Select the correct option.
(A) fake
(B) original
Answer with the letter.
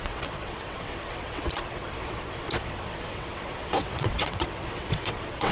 A